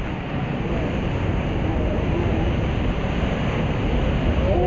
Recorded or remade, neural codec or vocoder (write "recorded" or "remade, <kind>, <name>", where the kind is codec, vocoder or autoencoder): recorded